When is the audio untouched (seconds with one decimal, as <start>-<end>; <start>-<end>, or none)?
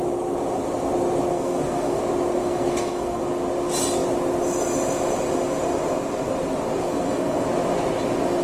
0.0-1.3; 2.0-2.4; 3.2-6.8; 7.5-8.4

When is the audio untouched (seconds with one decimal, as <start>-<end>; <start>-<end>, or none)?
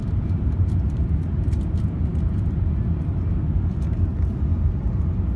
1.7-5.4